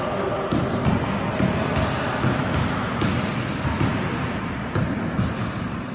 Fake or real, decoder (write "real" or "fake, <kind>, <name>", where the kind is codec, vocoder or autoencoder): real